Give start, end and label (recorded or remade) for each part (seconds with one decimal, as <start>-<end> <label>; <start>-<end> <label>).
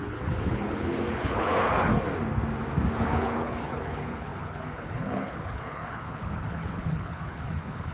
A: 0.0-1.9 remade; 1.9-3.0 recorded; 3.0-7.9 remade